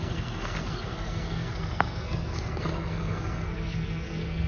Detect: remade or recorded remade